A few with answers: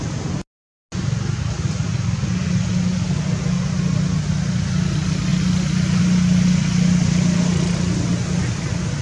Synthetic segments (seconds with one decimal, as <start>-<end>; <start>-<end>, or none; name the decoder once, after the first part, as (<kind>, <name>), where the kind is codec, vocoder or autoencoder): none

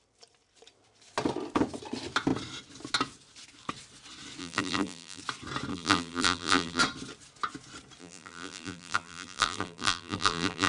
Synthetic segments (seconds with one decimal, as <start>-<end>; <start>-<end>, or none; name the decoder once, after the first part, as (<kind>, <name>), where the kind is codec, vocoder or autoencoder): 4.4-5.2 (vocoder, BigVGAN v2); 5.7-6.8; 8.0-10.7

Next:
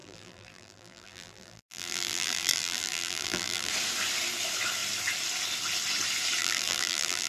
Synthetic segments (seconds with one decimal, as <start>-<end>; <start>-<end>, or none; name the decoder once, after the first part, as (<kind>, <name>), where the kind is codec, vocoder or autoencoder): 0.0-3.7 (vocoder, BigVGAN v2); 6.4-7.3

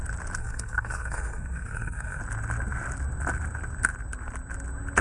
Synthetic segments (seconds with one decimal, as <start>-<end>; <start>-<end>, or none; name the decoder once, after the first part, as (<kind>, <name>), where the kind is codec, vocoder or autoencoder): 0.4-2.2 (codec, SNAC)